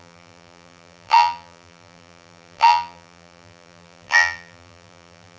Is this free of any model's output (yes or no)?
no